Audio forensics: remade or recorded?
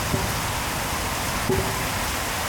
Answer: recorded